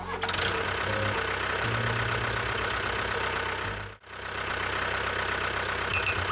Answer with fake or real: real